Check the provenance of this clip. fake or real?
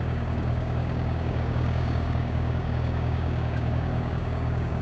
fake